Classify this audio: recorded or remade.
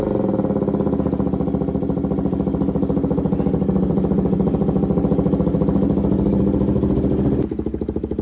recorded